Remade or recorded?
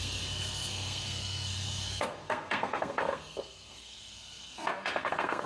remade